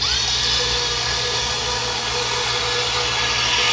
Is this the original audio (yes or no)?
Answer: yes